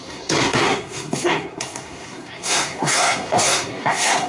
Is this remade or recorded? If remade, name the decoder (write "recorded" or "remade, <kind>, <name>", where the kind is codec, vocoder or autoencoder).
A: remade, codec, SNAC